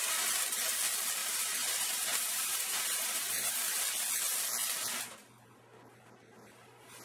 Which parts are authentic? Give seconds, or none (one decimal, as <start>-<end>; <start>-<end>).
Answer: 0.0-1.2; 3.8-7.0